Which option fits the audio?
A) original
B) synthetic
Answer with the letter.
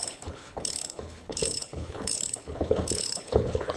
B